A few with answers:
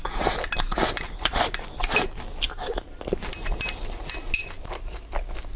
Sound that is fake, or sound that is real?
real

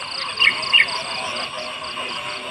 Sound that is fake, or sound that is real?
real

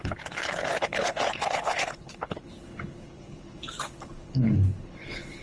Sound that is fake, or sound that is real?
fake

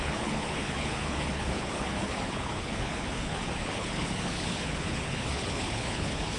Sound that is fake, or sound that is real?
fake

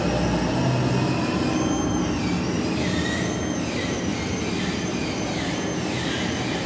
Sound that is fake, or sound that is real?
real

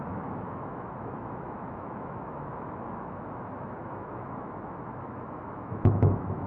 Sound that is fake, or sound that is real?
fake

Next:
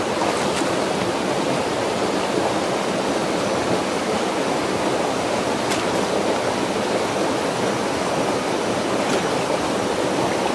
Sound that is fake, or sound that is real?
real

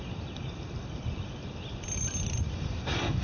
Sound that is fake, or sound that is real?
fake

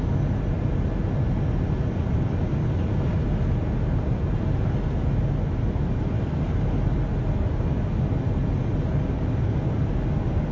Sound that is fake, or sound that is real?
real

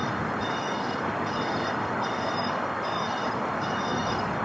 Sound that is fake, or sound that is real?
fake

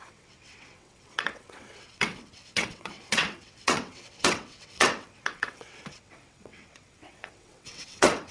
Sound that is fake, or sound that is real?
fake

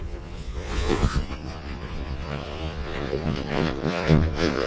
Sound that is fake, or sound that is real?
fake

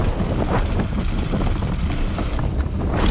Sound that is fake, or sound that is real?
real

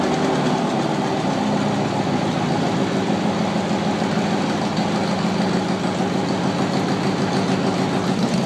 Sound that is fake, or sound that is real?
real